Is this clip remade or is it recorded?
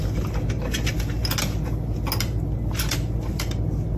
recorded